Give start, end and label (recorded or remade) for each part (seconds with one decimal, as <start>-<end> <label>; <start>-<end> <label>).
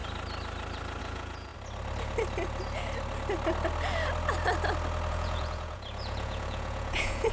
0.0-1.0 recorded; 1.0-1.5 remade; 1.5-5.1 recorded; 5.1-7.3 remade